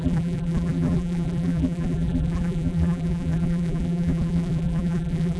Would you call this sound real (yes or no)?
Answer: no